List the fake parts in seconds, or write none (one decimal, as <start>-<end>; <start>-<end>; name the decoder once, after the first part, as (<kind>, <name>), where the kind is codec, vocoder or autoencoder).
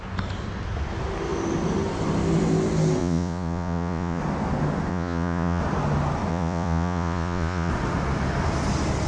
3.0-4.2 (vocoder, Vocos); 4.9-5.6; 6.3-7.7